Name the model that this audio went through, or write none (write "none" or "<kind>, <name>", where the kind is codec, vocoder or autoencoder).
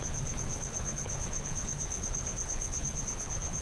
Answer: codec, HILCodec